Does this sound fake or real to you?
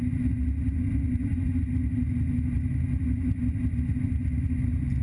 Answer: real